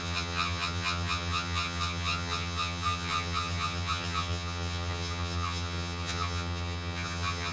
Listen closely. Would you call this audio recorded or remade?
remade